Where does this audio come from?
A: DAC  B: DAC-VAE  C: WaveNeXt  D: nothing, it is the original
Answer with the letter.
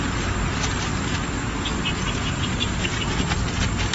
D